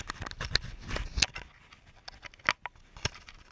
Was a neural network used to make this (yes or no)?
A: no